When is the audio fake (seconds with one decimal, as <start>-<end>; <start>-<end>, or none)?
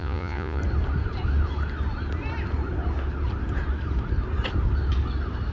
0.0-0.6